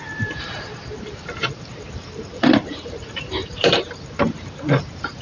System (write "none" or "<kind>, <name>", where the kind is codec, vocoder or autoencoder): vocoder, BigVGAN v2